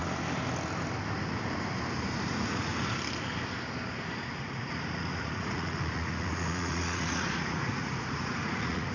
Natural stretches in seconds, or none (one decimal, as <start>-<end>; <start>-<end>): 0.0-2.3; 2.7-4.4